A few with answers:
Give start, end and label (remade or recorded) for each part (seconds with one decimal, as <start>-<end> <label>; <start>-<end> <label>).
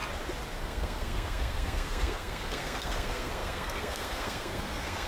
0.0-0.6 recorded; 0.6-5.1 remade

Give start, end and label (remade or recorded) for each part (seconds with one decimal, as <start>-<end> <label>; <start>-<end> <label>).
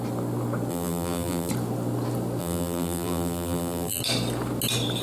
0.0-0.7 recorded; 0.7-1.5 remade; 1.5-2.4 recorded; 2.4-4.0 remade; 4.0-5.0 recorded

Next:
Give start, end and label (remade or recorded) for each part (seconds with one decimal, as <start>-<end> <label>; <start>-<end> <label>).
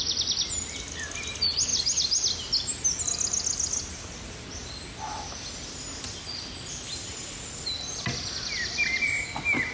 0.0-9.7 recorded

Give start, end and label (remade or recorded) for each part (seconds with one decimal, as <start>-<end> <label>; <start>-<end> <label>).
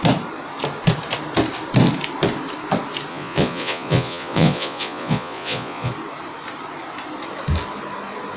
0.0-3.1 recorded; 3.1-5.9 remade; 5.9-8.4 recorded